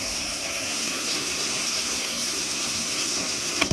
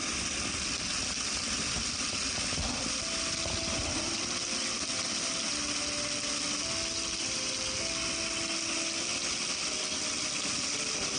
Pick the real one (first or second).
second